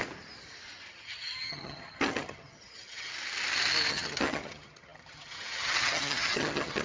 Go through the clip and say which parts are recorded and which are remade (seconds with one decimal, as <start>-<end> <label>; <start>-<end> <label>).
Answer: 0.0-0.9 recorded; 0.9-3.1 remade; 3.1-3.9 recorded; 3.9-6.8 remade